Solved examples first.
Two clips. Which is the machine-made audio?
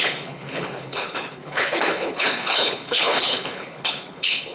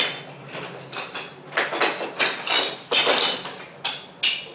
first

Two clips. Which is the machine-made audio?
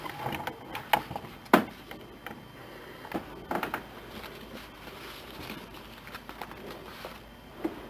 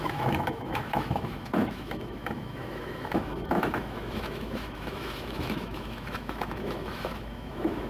second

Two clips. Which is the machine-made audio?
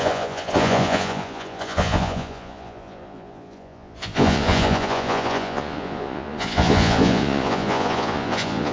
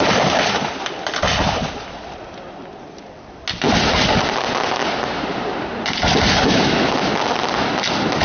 first